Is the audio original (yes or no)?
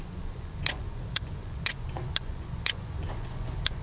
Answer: no